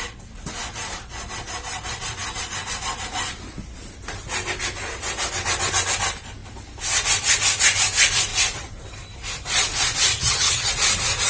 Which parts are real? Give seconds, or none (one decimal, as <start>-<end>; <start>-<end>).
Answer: 0.0-10.1; 10.7-11.3